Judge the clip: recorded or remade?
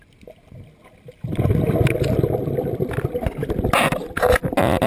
recorded